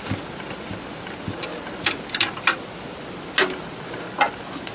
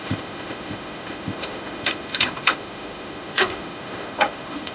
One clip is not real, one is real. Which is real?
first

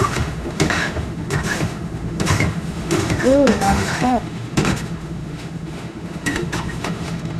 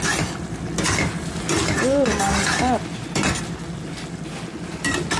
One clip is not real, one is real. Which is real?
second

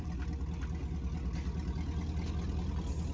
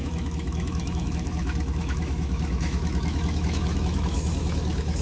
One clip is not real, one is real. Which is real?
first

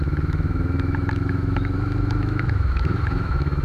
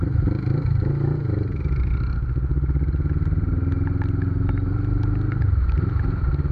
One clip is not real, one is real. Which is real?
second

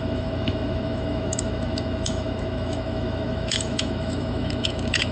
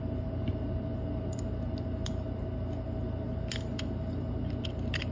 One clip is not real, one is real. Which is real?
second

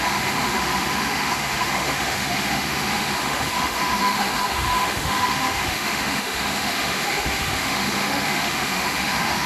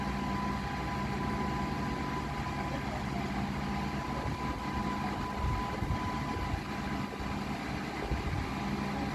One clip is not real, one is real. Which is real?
second